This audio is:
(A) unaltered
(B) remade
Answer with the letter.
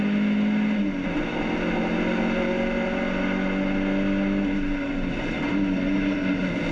A